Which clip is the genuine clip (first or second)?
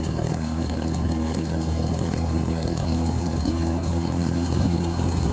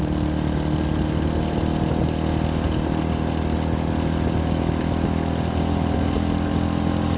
second